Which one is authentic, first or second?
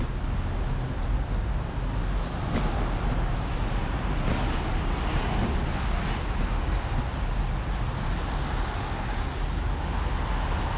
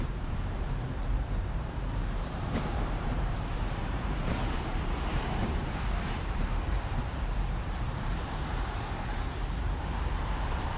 first